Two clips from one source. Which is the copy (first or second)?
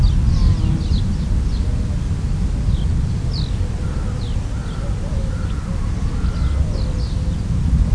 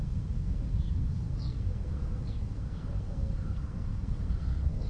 second